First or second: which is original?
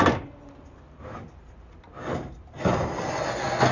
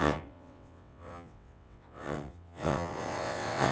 first